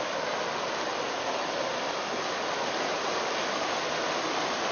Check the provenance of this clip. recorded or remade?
recorded